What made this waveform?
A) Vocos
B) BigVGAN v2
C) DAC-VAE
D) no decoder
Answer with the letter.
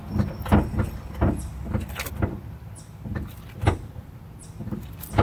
D